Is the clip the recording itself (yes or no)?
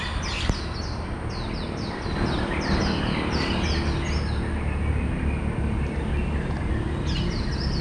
yes